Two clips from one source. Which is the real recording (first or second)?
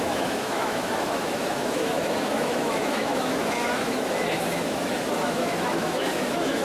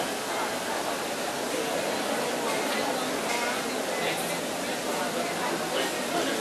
second